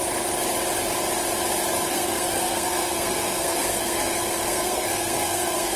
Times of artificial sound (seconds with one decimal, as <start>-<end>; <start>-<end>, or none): 1.9-5.8